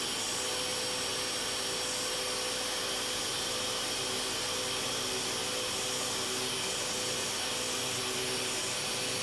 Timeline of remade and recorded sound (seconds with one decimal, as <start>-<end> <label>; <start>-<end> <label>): 0.0-7.2 recorded; 7.2-8.0 remade; 8.0-9.2 recorded